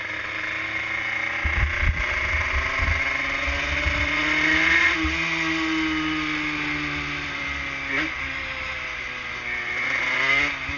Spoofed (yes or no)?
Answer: no